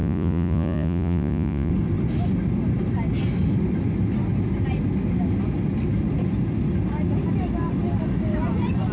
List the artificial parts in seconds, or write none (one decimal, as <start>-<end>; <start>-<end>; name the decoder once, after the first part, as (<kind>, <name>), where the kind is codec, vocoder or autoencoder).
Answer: 0.0-1.7 (vocoder, Vocos)